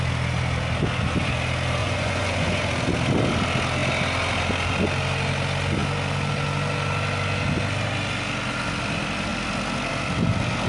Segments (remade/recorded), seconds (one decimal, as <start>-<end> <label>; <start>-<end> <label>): 0.0-1.8 recorded; 1.8-2.6 remade; 2.6-10.7 recorded